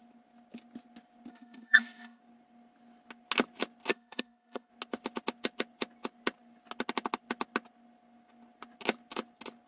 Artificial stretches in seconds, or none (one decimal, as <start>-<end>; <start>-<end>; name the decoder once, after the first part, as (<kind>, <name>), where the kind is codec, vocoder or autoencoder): 1.3-2.2 (codec, SNAC); 3.9-4.7